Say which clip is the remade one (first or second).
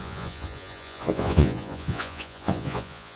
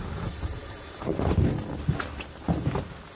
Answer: first